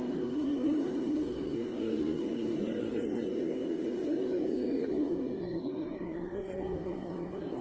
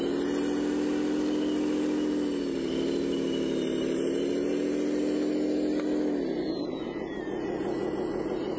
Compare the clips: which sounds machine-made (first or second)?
first